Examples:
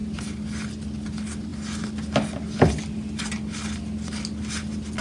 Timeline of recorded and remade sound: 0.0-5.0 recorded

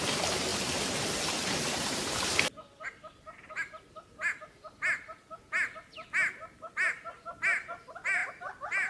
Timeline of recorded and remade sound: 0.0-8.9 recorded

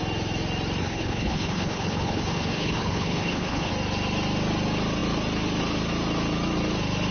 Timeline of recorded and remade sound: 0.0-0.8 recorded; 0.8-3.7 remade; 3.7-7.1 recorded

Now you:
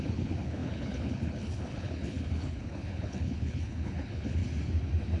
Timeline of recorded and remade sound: 0.0-4.4 remade; 4.4-5.2 recorded

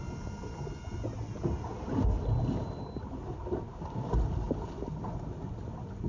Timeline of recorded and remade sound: 0.0-6.1 recorded

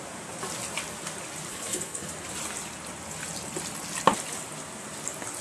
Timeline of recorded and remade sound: 0.0-1.5 recorded; 1.5-2.1 remade; 2.1-5.4 recorded

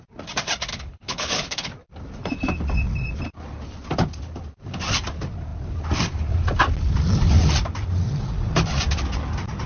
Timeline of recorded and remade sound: 0.0-0.7 recorded; 0.7-1.7 remade; 1.7-9.7 recorded

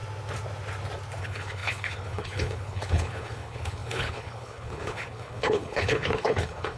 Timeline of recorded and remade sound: 0.0-1.2 recorded; 1.2-6.8 remade